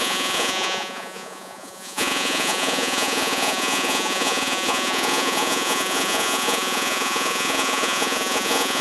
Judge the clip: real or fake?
fake